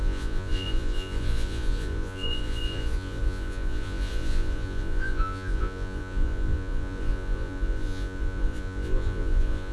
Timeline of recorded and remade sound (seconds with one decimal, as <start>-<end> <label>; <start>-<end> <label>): 0.0-9.7 remade